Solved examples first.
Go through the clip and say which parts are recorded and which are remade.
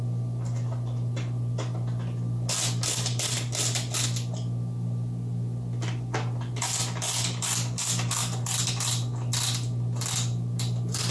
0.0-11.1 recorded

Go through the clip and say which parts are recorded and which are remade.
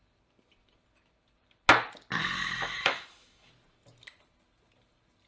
0.0-2.2 recorded; 2.2-3.5 remade; 3.5-5.3 recorded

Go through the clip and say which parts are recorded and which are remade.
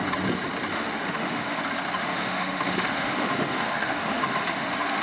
0.0-0.7 recorded; 0.7-1.6 remade; 1.6-2.0 recorded; 2.0-5.0 remade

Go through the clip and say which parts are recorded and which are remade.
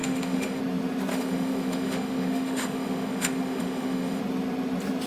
0.0-0.6 remade; 0.6-1.1 recorded; 1.1-4.2 remade; 4.2-5.1 recorded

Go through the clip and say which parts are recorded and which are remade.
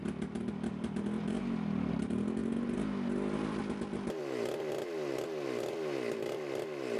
0.0-7.0 recorded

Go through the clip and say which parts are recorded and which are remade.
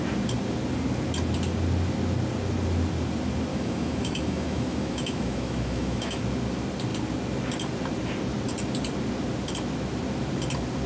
0.0-3.5 recorded; 3.5-6.2 remade; 6.2-10.9 recorded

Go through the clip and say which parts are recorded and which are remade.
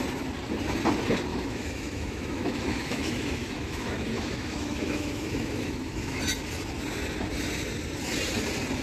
0.0-1.3 recorded; 1.3-6.2 remade; 6.2-8.8 recorded